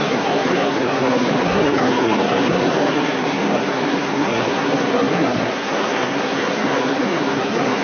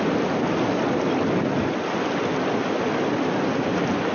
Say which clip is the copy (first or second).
first